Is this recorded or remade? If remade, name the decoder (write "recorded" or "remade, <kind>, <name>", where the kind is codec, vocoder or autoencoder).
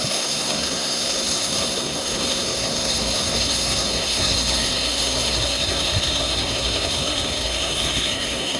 remade, codec, SNAC